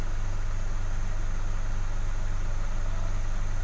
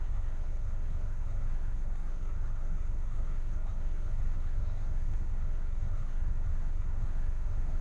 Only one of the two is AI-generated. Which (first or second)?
second